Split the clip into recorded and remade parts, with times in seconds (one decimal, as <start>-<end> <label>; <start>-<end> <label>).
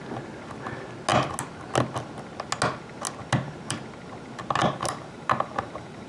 0.0-4.6 recorded; 4.6-6.1 remade